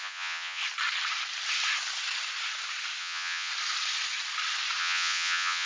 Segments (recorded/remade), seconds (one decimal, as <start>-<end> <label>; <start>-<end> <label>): 0.0-0.6 remade; 0.6-3.0 recorded; 3.0-3.5 remade; 3.5-4.8 recorded; 4.8-5.7 remade